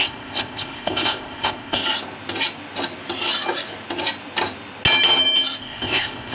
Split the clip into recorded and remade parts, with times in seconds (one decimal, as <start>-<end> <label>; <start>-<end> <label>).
0.0-1.8 remade; 1.8-5.6 recorded; 5.6-6.3 remade